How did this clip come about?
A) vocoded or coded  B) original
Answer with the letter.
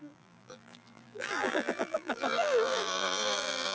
A